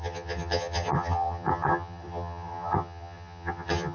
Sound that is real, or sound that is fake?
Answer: fake